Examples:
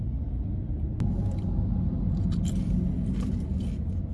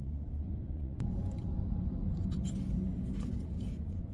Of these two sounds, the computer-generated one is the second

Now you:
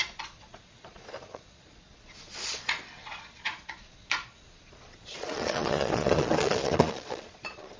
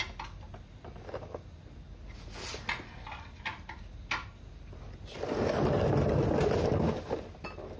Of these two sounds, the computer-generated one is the first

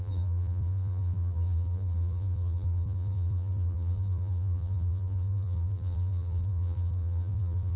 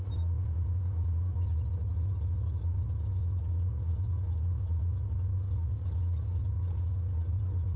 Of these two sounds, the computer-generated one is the first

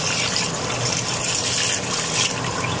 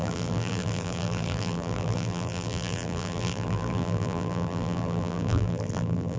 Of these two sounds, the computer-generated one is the second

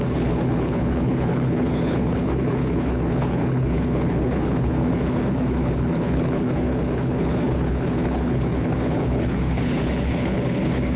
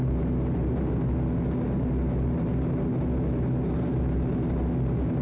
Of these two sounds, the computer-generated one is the first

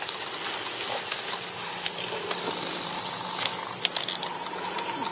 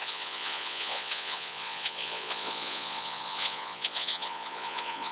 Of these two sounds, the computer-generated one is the second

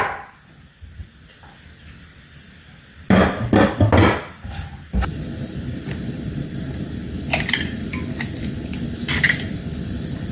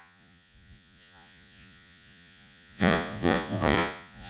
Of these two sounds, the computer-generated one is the second